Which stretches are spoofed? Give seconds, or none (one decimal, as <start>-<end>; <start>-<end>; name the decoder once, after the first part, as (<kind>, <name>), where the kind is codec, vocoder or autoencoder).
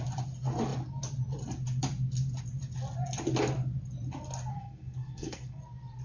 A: 4.5-5.6 (codec, SNAC)